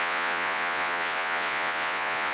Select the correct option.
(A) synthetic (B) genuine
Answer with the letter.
A